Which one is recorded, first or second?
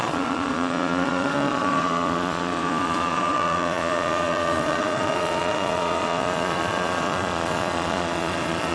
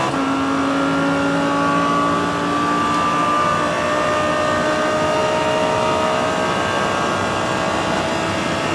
second